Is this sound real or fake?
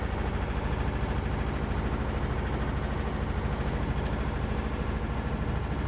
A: real